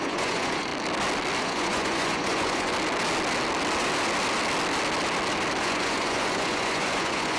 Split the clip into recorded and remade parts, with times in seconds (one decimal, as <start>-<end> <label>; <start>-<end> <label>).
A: 0.0-0.7 remade; 0.7-1.4 recorded; 1.4-2.7 remade; 2.7-5.6 recorded; 5.6-7.4 remade